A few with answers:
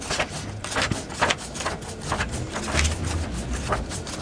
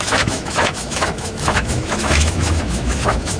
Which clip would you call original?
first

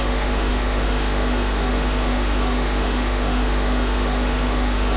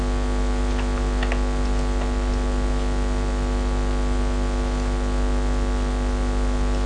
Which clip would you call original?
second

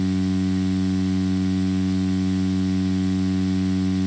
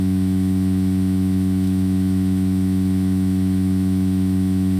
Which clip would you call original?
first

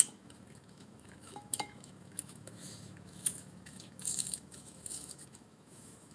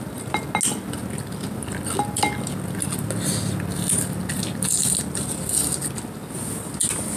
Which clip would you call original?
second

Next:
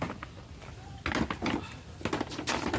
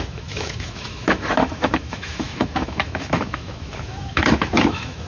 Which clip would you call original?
first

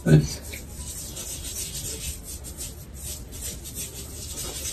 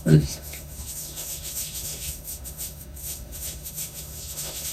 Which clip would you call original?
first